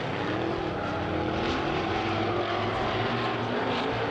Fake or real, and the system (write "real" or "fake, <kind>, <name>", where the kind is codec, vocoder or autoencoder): real